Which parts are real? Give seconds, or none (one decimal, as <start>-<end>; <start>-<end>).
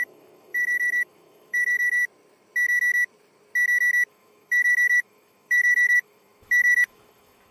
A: 2.0-4.1